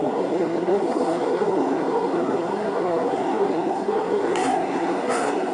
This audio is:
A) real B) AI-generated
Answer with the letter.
B